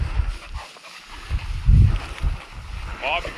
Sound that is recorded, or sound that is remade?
recorded